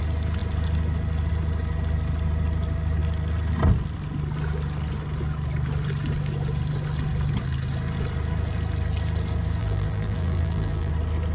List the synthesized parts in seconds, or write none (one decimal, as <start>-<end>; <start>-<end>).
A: 9.6-10.9